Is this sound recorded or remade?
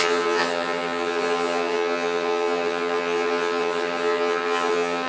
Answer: remade